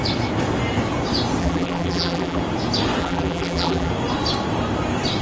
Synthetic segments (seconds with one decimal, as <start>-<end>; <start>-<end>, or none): 1.4-2.4; 3.0-3.9